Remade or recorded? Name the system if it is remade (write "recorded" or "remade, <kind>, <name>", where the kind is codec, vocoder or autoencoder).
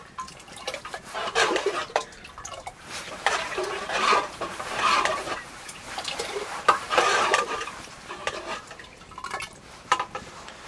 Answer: remade, vocoder, BigVGAN v2